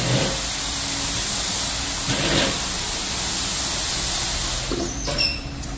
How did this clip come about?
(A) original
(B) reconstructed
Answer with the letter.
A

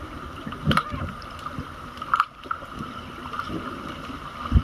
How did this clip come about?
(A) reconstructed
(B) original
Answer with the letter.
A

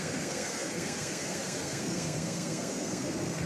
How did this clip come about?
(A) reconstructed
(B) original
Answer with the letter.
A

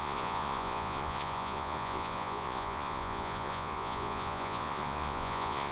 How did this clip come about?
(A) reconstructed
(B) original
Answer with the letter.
A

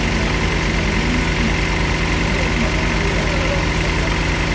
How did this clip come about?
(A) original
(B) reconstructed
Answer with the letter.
A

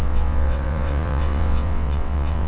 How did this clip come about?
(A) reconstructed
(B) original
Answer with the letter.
A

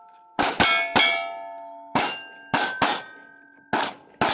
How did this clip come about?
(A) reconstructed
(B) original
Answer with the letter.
B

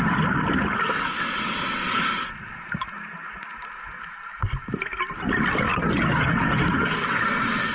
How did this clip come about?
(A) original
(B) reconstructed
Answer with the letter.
A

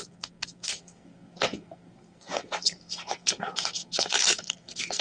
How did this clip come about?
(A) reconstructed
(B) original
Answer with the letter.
A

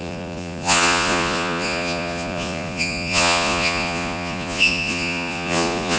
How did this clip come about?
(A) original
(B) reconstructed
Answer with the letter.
B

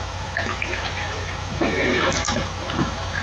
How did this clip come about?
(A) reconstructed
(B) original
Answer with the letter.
A